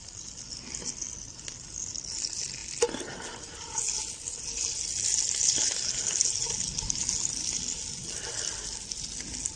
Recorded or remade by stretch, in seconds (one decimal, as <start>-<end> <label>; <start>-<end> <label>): 0.0-9.6 recorded